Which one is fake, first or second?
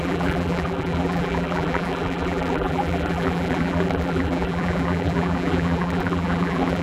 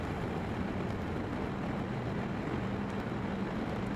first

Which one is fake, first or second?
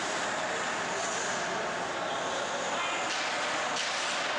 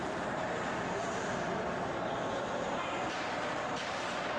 second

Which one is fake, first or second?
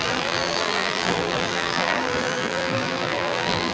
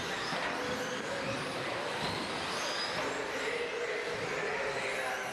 first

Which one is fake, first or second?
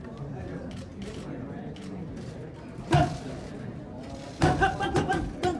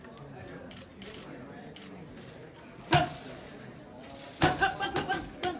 first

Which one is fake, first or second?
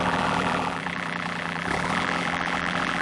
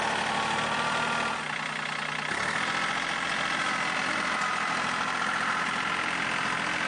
first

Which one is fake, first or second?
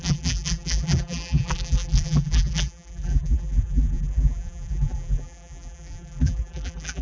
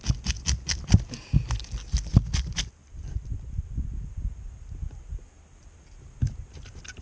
first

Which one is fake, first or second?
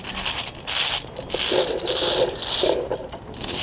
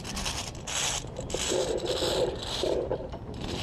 second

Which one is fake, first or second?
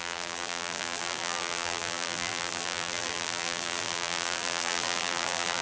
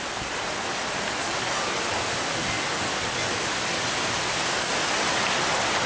first